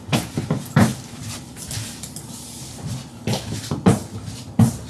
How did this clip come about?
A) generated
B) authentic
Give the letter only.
B